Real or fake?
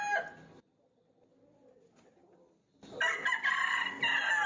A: real